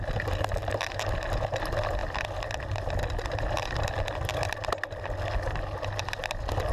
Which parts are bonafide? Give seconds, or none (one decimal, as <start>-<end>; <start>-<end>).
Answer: 0.0-6.7